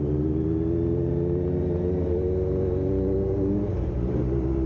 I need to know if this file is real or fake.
real